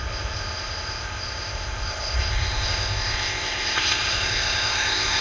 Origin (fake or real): fake